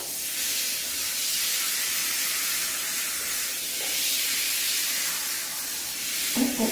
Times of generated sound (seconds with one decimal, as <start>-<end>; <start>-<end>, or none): 2.0-4.5; 5.5-6.7